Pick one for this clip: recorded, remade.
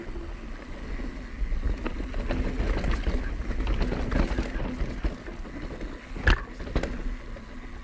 recorded